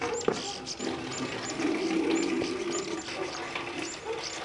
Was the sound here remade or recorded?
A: recorded